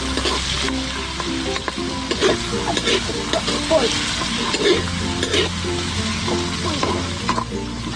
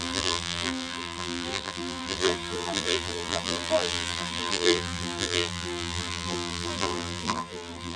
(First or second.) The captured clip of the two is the first